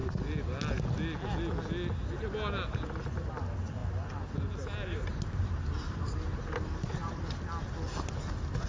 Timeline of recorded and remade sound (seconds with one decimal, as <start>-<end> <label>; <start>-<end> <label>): 0.0-5.1 recorded; 5.1-7.1 remade; 7.1-8.7 recorded